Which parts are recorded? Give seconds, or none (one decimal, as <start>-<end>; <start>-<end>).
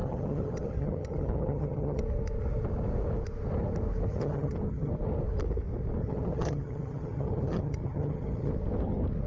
2.0-4.1; 4.9-6.0; 8.5-9.3